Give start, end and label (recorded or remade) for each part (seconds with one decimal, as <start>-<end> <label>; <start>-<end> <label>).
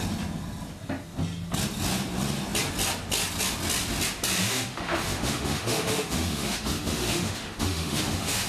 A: 0.0-4.4 recorded; 4.4-8.5 remade